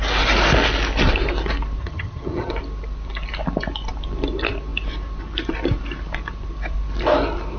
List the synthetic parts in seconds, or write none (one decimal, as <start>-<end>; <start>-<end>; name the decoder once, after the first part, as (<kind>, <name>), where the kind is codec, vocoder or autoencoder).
1.8-2.5 (vocoder, HiFi-GAN)